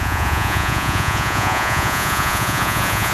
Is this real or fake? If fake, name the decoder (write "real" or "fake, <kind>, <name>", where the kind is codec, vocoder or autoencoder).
fake, vocoder, Vocos